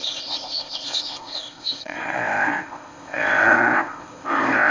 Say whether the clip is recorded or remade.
remade